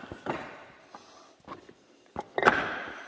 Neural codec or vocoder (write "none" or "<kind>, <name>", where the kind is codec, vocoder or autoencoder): none